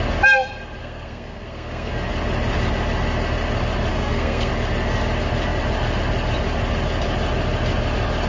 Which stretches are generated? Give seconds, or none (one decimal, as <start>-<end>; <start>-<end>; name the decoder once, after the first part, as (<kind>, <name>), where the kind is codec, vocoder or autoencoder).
0.8-1.9 (codec, SNAC); 3.9-4.5